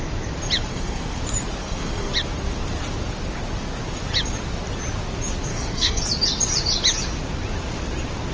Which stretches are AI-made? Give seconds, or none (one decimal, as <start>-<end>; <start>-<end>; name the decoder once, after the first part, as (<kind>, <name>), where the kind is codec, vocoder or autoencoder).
0.7-1.2 (codec, SNAC); 1.6-2.1; 5.5-6.0